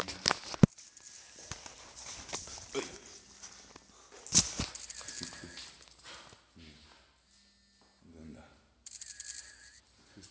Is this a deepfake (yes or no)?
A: no